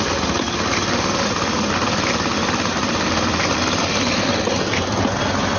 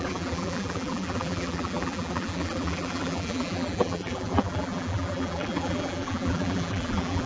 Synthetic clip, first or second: second